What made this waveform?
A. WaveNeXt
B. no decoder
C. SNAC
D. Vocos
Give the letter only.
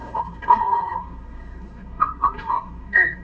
C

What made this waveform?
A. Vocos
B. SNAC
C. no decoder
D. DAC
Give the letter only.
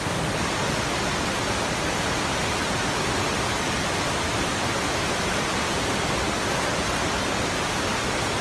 C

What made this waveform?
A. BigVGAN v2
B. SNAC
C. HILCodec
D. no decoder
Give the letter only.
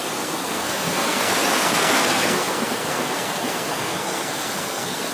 B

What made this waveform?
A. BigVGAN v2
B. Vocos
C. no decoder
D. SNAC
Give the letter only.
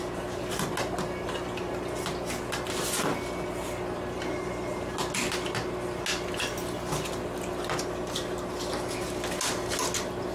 C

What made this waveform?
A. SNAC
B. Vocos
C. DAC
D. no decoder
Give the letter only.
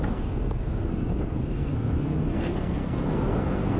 A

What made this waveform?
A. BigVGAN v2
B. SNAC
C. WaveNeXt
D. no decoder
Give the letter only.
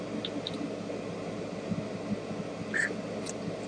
D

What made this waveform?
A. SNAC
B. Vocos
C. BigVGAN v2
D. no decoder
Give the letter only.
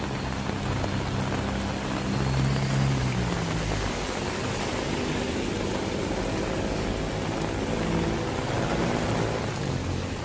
D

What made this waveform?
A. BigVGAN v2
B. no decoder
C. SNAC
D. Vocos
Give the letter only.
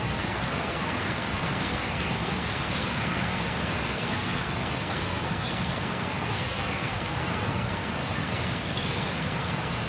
C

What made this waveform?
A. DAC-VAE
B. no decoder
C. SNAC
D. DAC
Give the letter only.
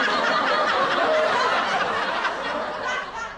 B